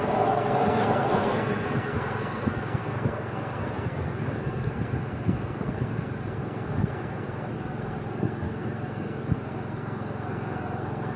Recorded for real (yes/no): no